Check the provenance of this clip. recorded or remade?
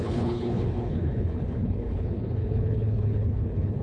remade